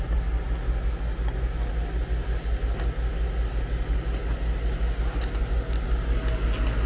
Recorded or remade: recorded